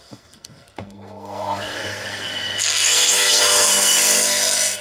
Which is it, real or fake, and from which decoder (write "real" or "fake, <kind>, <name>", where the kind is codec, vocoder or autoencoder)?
fake, codec, SNAC